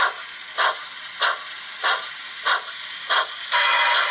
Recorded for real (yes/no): yes